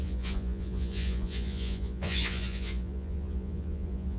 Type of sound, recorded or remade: remade